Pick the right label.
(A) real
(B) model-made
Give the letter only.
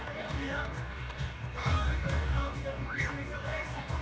B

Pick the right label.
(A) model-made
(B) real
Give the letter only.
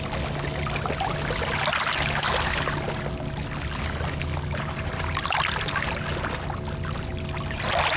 B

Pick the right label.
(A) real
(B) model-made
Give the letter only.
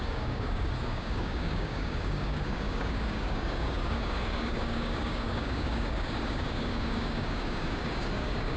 B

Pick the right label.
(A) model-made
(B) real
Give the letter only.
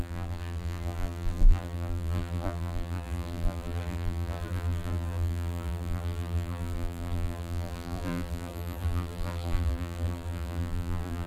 A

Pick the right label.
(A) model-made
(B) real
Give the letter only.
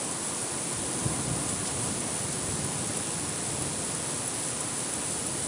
B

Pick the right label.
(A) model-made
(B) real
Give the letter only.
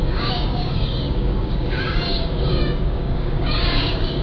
A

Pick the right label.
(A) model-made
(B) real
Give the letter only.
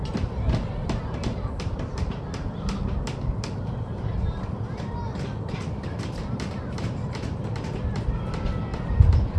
A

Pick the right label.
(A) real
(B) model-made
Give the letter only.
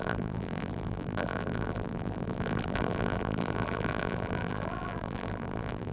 B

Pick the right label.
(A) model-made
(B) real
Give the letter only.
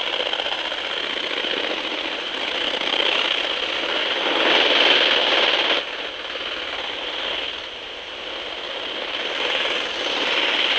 B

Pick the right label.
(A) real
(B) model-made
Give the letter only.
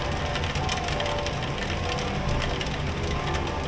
A